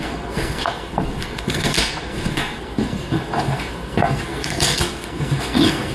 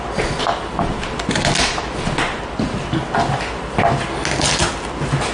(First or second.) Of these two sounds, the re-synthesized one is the first